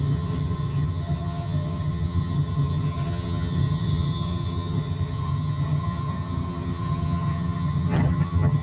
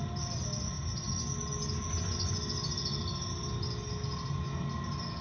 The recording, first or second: second